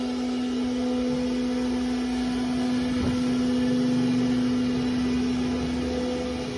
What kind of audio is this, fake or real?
real